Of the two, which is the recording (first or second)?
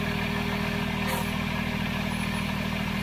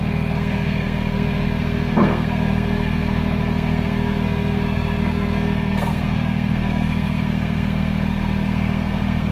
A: first